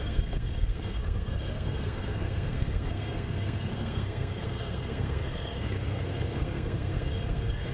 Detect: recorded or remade remade